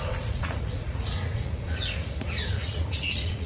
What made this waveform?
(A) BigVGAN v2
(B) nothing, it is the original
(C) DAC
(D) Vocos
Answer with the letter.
D